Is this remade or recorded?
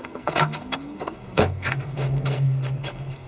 remade